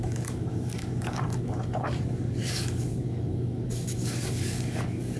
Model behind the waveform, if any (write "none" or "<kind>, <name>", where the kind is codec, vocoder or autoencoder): codec, DAC